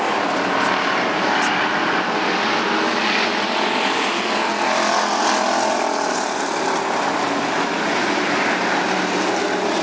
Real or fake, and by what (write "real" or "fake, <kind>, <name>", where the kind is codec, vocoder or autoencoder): real